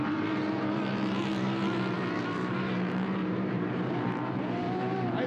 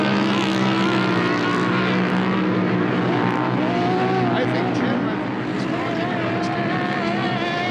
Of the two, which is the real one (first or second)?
second